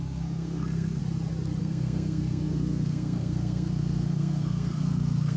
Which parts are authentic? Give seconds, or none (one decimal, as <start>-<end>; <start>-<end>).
1.0-1.6